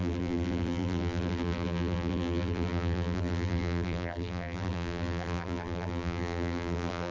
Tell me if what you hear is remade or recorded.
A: remade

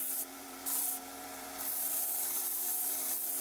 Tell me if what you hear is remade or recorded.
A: remade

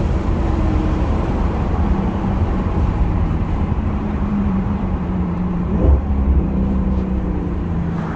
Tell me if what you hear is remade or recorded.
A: remade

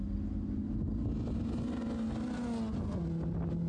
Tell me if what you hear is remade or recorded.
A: recorded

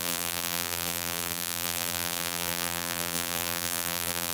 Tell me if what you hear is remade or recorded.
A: remade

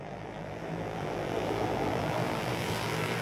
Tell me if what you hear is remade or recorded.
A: remade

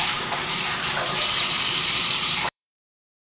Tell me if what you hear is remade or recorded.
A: remade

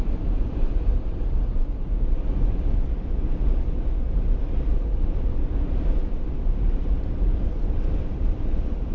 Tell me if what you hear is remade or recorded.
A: remade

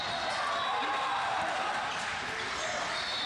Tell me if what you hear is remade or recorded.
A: recorded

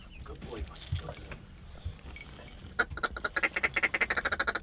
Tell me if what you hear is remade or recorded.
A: recorded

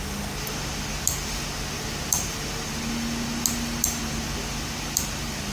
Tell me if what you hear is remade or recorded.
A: recorded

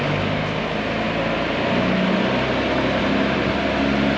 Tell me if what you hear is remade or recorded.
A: recorded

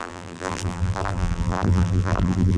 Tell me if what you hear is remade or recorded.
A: remade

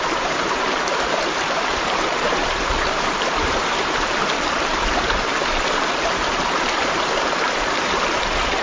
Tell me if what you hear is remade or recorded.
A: remade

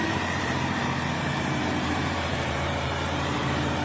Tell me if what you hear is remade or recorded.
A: remade